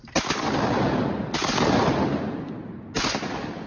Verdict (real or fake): real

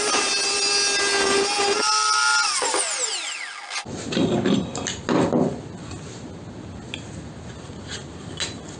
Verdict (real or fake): real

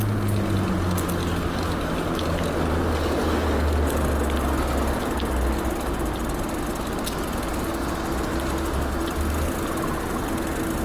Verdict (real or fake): real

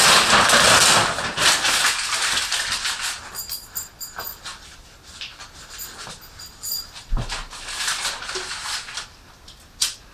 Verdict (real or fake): real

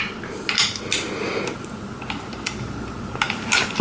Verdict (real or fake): real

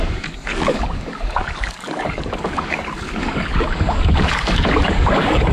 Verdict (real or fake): fake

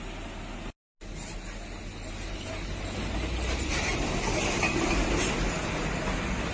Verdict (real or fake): real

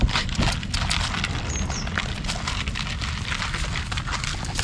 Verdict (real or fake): real